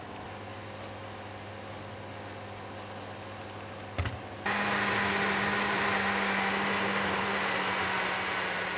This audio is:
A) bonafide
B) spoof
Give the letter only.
A